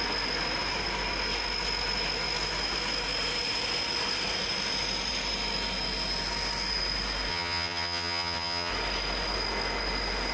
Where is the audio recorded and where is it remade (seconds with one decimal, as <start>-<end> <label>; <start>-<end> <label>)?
0.0-7.3 recorded; 7.3-8.7 remade; 8.7-10.3 recorded